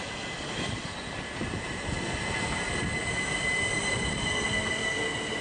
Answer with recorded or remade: recorded